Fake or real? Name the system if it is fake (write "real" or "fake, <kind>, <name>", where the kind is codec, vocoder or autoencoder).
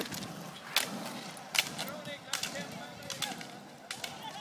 real